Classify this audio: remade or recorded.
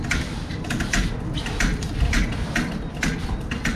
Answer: recorded